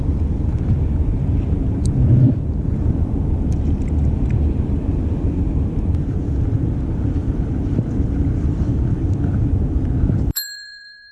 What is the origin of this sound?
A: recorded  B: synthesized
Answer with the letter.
B